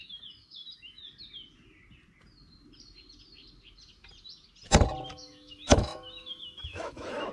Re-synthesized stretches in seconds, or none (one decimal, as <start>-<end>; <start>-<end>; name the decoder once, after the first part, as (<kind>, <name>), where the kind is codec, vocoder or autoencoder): 0.0-1.0 (autoencoder, DAC-VAE); 5.1-7.3